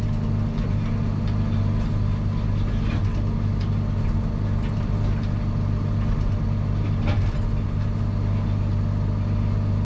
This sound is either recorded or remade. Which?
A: recorded